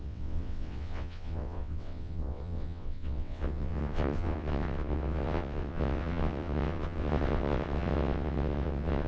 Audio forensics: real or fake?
fake